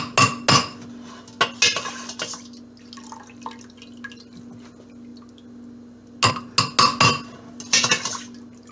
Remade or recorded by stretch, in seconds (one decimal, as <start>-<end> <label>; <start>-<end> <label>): 0.0-8.7 recorded